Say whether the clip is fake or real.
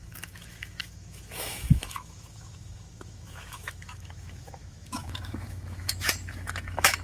fake